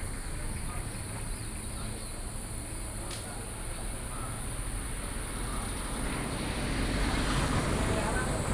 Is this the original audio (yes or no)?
yes